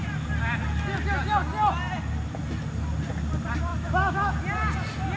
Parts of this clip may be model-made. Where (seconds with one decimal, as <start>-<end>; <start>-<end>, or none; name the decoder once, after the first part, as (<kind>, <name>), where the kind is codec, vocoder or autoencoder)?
3.7-4.3 (autoencoder, DAC-VAE)